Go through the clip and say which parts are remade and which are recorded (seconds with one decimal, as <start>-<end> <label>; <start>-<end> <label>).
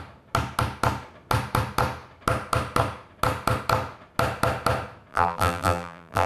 0.0-5.1 recorded; 5.1-6.3 remade